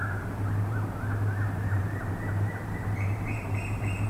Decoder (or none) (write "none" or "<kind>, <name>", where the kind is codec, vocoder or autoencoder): vocoder, BigVGAN v2